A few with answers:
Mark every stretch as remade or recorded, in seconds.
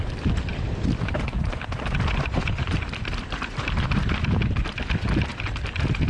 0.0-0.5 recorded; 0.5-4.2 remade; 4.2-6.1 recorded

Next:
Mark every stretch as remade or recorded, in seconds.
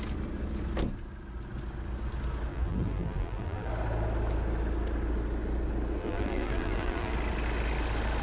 0.0-2.5 recorded; 2.5-3.7 remade; 3.7-6.0 recorded; 6.0-7.1 remade; 7.1-8.2 recorded